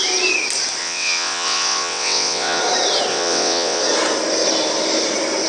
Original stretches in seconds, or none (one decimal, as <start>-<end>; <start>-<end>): 0.0-0.8; 2.6-3.1; 3.8-5.5

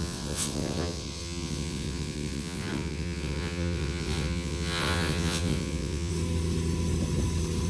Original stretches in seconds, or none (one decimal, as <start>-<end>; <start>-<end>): 6.1-7.7

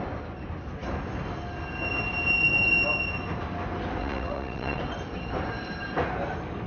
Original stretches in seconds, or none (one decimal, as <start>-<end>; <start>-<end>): 0.0-4.0; 4.8-6.7

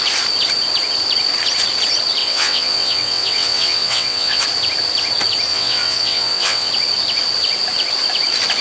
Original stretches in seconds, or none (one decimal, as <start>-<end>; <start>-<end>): 0.0-2.2; 4.4-5.5; 6.7-8.6